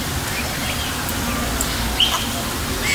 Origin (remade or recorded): recorded